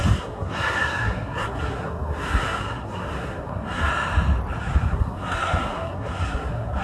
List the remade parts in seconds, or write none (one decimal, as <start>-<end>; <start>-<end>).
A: 0.0-3.9; 4.6-6.8